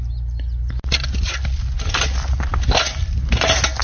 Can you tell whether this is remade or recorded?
recorded